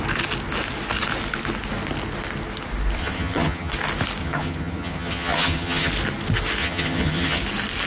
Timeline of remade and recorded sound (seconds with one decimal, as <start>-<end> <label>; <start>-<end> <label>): 0.0-3.0 recorded; 3.0-3.7 remade; 3.7-4.2 recorded; 4.2-5.9 remade; 5.9-6.6 recorded; 6.6-7.4 remade; 7.4-7.9 recorded